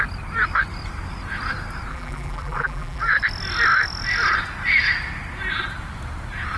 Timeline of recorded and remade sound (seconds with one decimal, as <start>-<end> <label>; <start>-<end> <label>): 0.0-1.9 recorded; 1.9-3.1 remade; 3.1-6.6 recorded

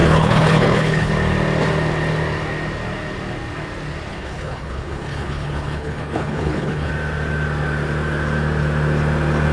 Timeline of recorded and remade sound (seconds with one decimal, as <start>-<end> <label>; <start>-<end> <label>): 0.0-1.1 remade; 1.1-4.1 recorded; 4.1-6.9 remade; 6.9-9.5 recorded

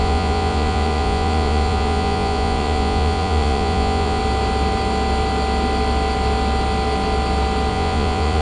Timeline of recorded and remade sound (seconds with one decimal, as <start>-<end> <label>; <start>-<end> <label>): 0.0-4.2 remade; 4.2-7.7 recorded; 7.7-8.4 remade

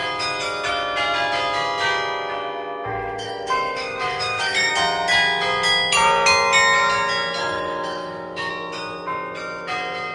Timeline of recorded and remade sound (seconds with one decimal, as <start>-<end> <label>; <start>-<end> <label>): 0.0-2.9 recorded; 2.9-4.7 remade; 4.7-7.4 recorded; 7.4-8.5 remade; 8.5-10.1 recorded

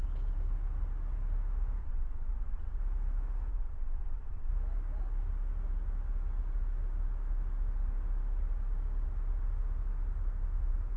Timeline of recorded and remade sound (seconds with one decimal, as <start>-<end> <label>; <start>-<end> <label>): 0.0-1.8 recorded; 1.8-2.8 remade; 2.8-3.5 recorded; 3.5-4.5 remade; 4.5-11.0 recorded

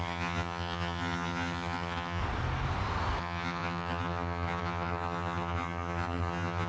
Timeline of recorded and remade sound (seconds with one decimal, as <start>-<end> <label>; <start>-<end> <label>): 0.0-2.2 remade; 2.2-3.2 recorded; 3.2-6.7 remade